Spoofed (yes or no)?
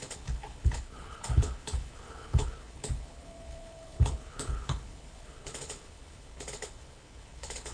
yes